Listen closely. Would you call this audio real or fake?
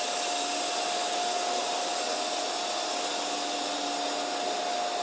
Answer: real